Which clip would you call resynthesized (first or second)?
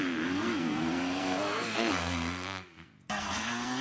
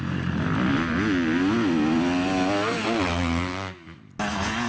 first